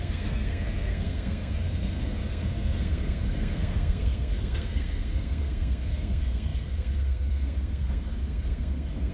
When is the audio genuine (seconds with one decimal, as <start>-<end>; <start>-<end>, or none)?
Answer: none